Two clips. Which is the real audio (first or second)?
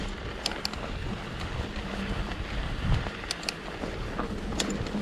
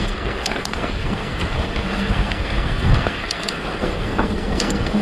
first